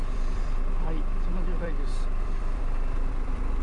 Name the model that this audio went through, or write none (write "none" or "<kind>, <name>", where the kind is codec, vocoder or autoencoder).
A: vocoder, BigVGAN v2